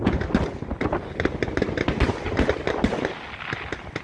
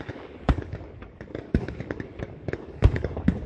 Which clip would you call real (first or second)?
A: first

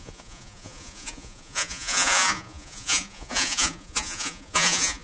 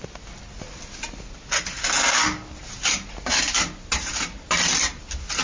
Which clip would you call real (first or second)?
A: second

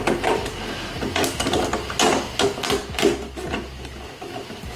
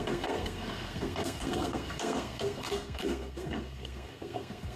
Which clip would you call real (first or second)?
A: first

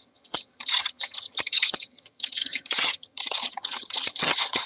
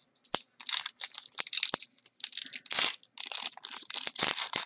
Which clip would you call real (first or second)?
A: second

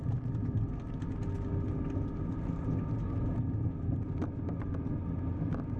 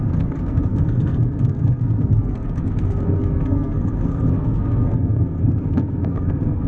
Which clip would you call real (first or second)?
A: first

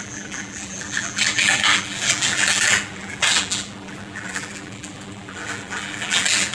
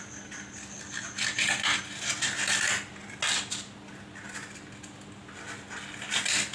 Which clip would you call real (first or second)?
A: second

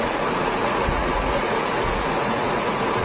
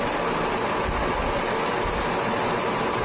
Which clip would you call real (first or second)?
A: second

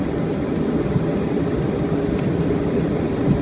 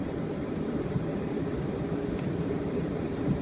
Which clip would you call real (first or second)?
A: first